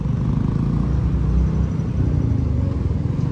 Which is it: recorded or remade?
recorded